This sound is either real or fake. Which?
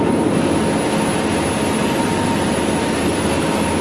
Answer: real